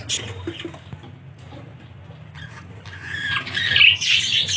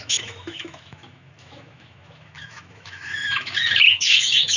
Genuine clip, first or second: first